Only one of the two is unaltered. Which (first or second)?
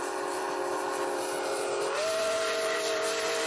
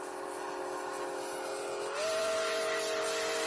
second